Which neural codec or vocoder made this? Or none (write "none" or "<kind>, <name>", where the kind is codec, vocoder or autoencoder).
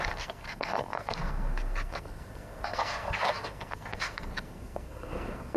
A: codec, SNAC